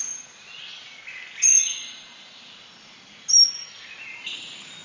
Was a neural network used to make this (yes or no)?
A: no